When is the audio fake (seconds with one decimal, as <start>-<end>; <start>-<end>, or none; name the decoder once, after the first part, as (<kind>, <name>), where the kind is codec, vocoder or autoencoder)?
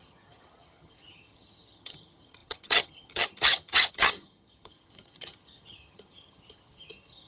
0.0-7.3 (vocoder, HiFi-GAN)